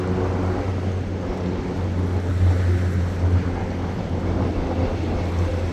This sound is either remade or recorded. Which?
recorded